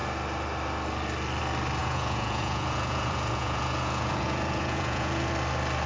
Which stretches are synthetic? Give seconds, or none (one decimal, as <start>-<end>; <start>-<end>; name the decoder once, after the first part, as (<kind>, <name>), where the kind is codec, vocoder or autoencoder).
1.8-5.3 (vocoder, Vocos)